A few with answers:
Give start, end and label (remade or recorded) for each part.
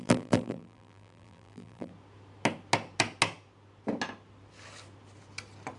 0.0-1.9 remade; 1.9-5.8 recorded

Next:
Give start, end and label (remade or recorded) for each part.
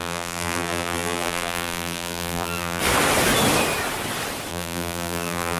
0.0-2.8 remade; 2.8-4.5 recorded; 4.5-5.6 remade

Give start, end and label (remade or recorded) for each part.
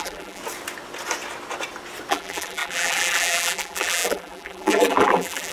0.0-0.4 remade; 0.4-2.1 recorded; 2.1-5.5 remade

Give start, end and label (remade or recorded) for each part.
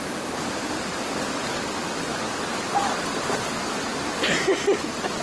0.0-5.2 recorded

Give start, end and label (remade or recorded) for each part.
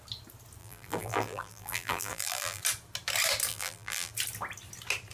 0.0-0.6 recorded; 0.6-2.6 remade; 2.6-3.5 recorded; 3.5-4.1 remade; 4.1-5.1 recorded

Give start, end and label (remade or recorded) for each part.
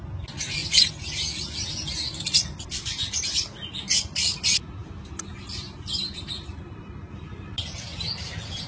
0.0-4.8 recorded; 4.8-6.2 remade; 6.2-8.7 recorded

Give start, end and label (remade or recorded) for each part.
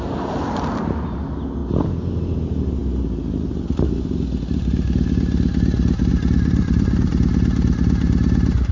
0.0-1.6 recorded; 1.6-2.2 remade; 2.2-6.1 recorded; 6.1-7.1 remade; 7.1-8.7 recorded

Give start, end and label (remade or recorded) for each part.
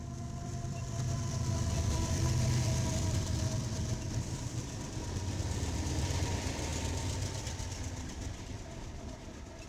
0.0-6.7 remade; 6.7-9.7 recorded